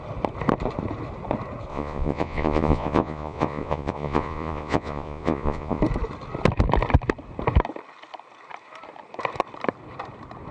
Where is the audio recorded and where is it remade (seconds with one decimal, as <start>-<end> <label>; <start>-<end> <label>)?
0.0-1.7 recorded; 1.7-5.8 remade; 5.8-10.5 recorded